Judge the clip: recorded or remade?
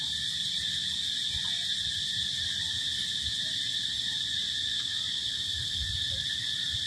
recorded